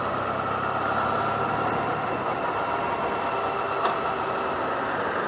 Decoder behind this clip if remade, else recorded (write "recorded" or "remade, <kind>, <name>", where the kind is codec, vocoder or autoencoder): recorded